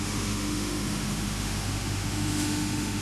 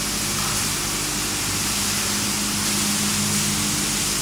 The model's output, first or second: first